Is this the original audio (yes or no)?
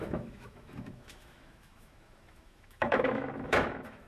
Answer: no